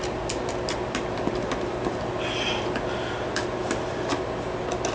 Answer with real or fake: real